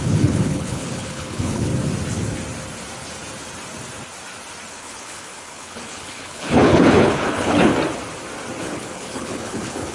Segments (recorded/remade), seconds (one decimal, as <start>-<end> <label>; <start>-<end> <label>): 0.0-1.7 remade; 1.7-4.7 recorded; 4.7-7.7 remade; 7.7-8.6 recorded; 8.6-9.9 remade